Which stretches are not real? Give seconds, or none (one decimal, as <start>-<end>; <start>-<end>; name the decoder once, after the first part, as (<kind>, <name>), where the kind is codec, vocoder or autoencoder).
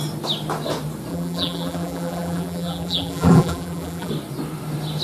1.1-4.1 (vocoder, BigVGAN v2)